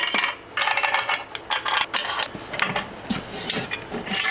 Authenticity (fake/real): real